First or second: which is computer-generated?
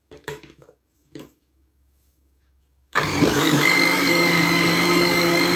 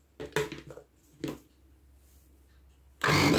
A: first